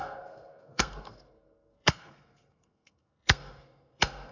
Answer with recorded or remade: remade